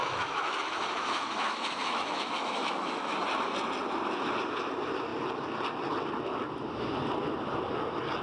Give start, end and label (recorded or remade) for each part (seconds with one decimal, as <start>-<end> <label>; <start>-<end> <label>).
0.0-3.2 remade; 3.2-8.2 recorded